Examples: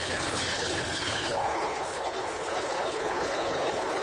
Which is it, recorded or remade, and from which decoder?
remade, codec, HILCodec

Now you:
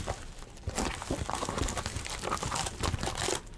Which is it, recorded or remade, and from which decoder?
recorded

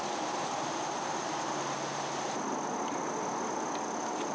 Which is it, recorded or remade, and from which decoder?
recorded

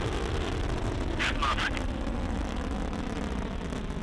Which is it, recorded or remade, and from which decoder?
recorded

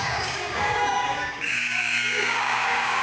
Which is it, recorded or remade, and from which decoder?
remade, codec, DAC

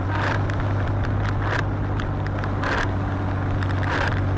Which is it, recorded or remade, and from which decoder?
remade, vocoder, BigVGAN v2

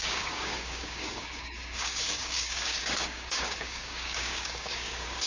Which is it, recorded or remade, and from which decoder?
remade, codec, DAC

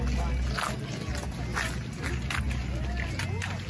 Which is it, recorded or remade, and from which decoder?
recorded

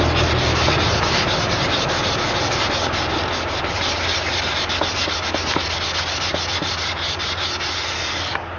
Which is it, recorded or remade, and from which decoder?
recorded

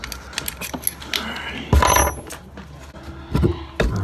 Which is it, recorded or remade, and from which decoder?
recorded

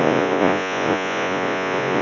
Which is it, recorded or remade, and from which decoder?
remade, vocoder, Vocos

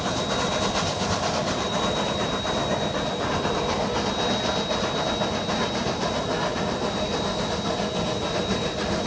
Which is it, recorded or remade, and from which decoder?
recorded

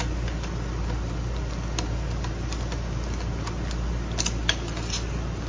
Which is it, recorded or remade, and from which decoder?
recorded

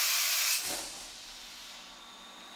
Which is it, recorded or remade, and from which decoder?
remade, vocoder, BigVGAN v2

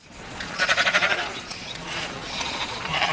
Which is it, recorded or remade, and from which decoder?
remade, vocoder, Vocos